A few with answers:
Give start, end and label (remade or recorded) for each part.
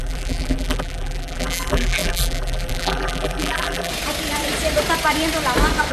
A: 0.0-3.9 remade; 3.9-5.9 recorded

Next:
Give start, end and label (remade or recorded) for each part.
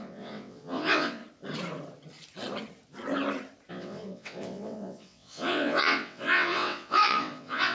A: 0.0-1.2 remade; 1.2-3.7 recorded; 3.7-7.7 remade